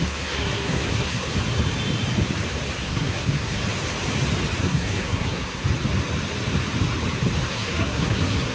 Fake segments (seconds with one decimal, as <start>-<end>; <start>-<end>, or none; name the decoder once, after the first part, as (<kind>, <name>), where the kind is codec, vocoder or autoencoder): 0.0-1.3 (codec, SNAC); 2.8-3.6; 4.6-5.6; 7.5-8.5